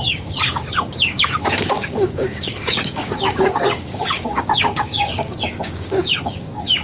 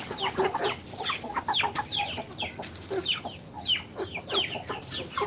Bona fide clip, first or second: second